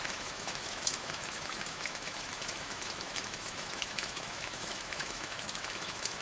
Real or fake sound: fake